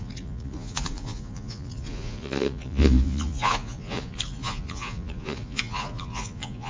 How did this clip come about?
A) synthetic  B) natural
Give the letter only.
A